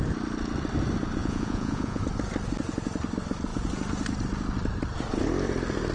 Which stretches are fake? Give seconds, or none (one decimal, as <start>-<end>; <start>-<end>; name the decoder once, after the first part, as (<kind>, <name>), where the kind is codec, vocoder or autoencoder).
1.2-2.0 (vocoder, Vocos)